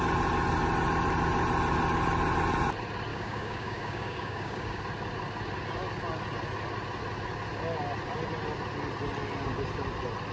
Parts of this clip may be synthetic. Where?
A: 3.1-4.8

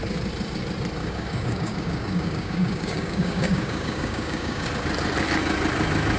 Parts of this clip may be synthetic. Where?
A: 1.0-4.7

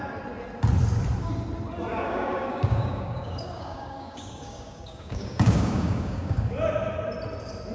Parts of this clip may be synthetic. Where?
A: 1.9-6.5

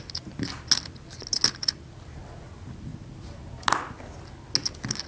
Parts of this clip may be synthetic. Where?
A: none

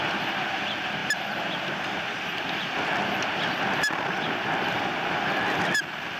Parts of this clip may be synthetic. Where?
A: none